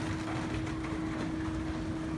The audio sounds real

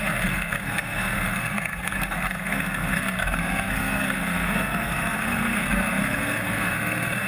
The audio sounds fake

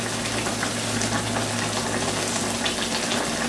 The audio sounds real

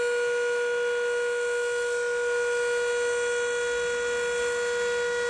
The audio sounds real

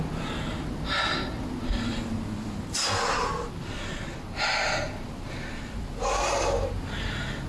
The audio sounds real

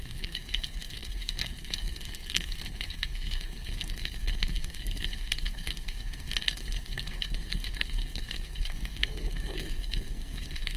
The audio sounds fake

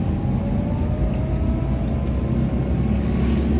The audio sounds real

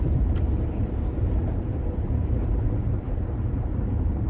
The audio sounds fake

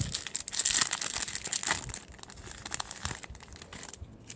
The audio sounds real